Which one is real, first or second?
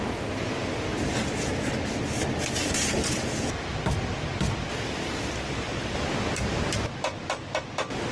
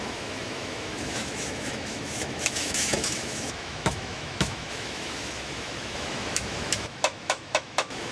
first